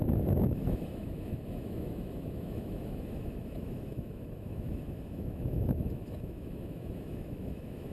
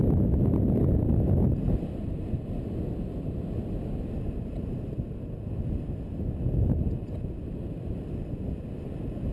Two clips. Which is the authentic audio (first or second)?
second